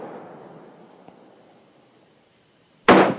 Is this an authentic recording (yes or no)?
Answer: yes